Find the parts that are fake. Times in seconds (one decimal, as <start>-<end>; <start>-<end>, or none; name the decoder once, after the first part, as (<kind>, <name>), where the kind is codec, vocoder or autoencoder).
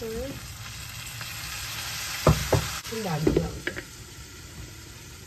2.4-3.6 (vocoder, BigVGAN v2)